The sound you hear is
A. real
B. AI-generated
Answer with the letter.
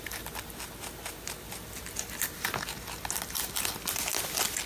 A